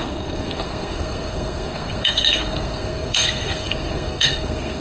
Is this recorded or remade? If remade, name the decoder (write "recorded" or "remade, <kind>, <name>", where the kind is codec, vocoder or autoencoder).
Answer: remade, codec, SNAC